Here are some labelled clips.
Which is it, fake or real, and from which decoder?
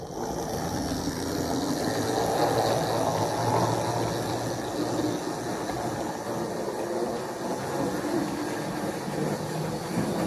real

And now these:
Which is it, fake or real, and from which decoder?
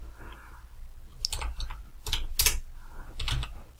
real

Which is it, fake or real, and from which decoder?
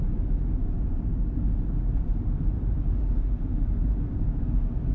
fake, vocoder, BigVGAN v2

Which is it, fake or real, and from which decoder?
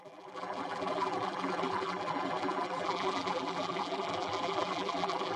fake, vocoder, BigVGAN v2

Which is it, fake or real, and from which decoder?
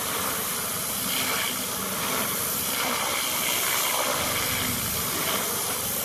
real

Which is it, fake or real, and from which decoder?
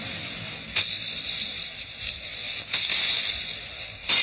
real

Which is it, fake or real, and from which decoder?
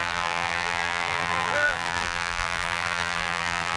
fake, vocoder, BigVGAN v2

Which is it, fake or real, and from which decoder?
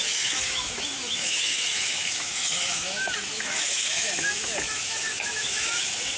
fake, autoencoder, DAC-VAE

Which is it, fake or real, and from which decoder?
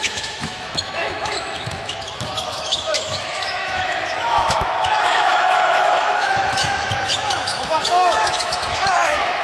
fake, autoencoder, DAC-VAE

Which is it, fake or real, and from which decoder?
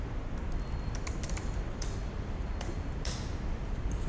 real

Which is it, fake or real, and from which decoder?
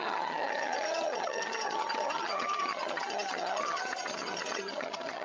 fake, vocoder, HiFi-GAN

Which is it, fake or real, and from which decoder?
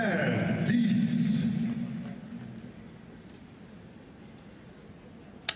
real